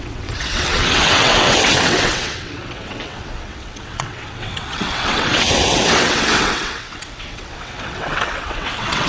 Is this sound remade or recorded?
remade